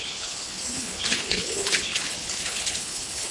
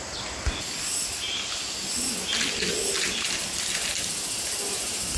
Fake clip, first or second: first